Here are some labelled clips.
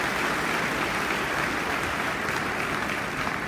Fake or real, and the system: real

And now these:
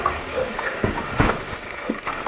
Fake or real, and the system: fake, autoencoder, DAC-VAE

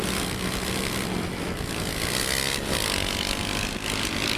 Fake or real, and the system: real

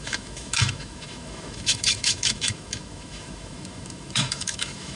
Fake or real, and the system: fake, autoencoder, DAC-VAE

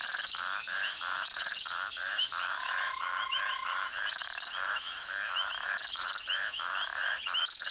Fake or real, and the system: fake, autoencoder, DAC-VAE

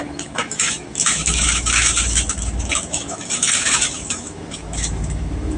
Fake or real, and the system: fake, autoencoder, DAC-VAE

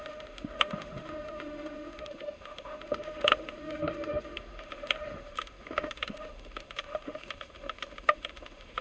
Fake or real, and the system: fake, autoencoder, DAC-VAE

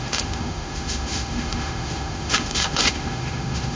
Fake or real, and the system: fake, autoencoder, DAC-VAE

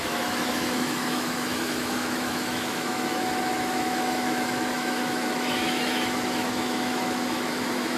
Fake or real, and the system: fake, autoencoder, DAC-VAE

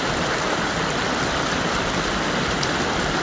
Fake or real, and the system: real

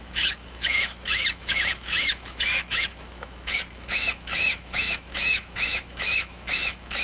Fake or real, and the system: fake, autoencoder, DAC-VAE